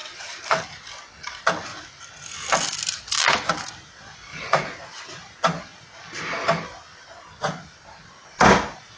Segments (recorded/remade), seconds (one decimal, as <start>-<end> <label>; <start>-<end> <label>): 0.0-0.6 remade; 0.6-4.3 recorded; 4.3-5.2 remade; 5.2-9.0 recorded